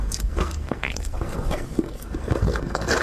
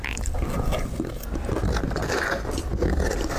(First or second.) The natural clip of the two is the second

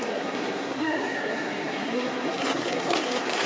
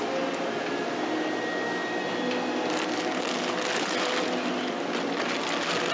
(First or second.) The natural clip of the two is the second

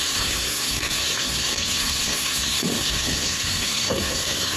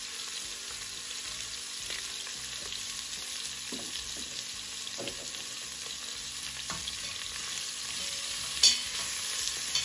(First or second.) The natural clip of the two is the second